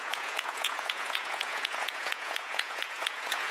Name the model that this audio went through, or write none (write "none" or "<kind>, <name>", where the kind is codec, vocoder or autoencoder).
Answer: vocoder, Vocos